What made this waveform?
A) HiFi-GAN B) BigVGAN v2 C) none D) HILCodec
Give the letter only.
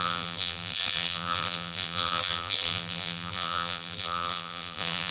B